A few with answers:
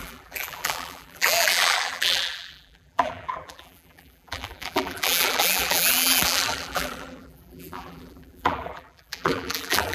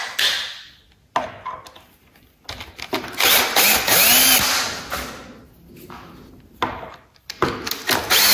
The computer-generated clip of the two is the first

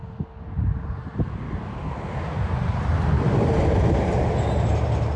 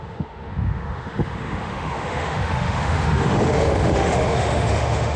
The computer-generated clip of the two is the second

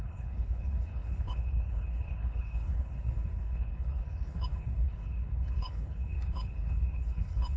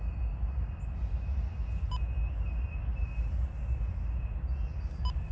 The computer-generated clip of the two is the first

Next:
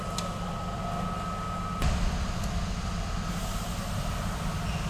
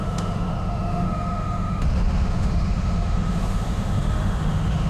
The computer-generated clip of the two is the second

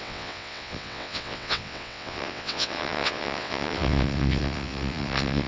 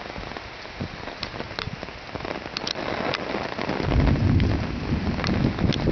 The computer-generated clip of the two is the first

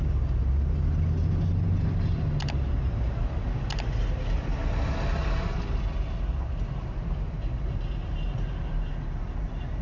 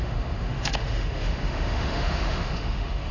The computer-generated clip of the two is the second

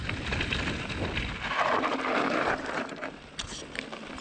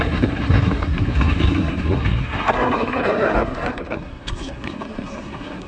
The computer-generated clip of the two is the second